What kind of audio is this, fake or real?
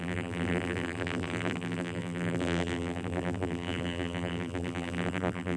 fake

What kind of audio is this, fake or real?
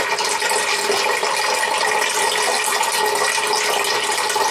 real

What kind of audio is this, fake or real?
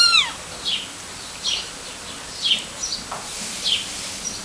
real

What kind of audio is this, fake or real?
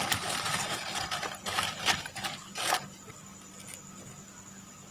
real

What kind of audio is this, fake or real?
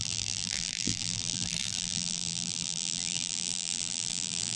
fake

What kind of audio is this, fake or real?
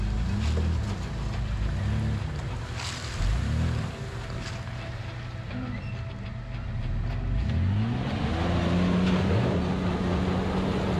real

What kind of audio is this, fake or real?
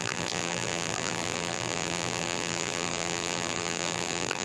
fake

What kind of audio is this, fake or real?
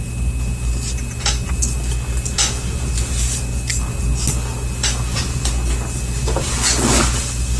real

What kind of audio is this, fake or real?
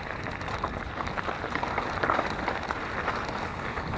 real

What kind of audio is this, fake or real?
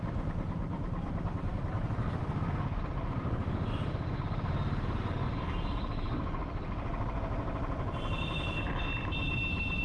real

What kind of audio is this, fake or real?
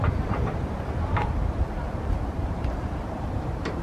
fake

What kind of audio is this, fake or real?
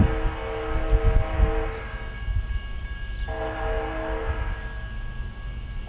real